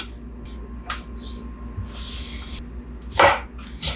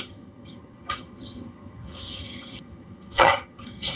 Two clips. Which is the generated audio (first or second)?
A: second